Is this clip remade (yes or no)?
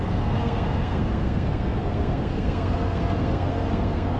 yes